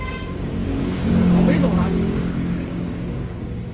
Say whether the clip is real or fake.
fake